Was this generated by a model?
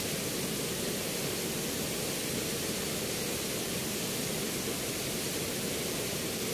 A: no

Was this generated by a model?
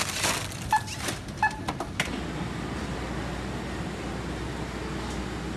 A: no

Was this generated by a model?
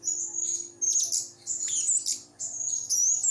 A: no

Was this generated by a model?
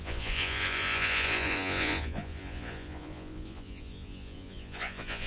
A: yes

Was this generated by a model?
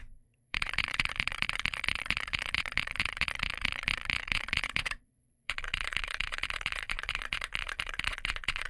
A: yes